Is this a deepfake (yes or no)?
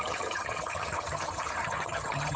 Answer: yes